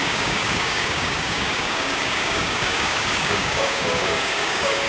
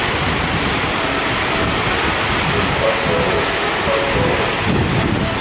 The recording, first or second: second